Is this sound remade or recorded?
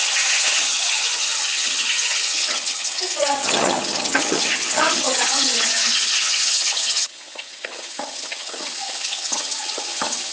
remade